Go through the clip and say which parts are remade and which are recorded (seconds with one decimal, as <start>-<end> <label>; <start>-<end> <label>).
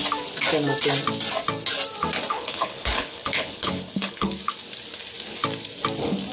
0.0-2.3 recorded; 2.3-4.3 remade; 4.3-6.3 recorded